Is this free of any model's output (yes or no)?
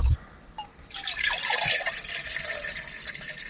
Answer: yes